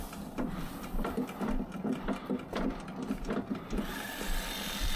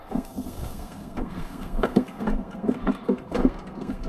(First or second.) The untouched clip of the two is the first